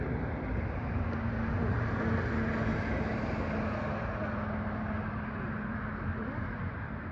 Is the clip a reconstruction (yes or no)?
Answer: no